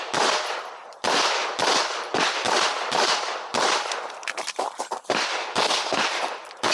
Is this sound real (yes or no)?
yes